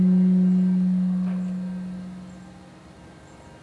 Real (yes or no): yes